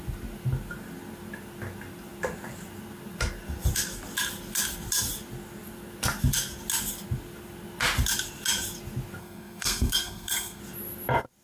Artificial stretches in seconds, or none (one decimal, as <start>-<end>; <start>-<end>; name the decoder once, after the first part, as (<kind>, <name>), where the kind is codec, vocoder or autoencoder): 9.2-10.6 (codec, SNAC)